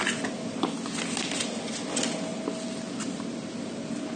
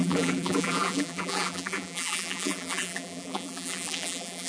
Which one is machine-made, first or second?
second